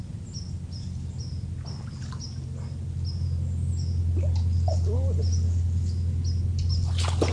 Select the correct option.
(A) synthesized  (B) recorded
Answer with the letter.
B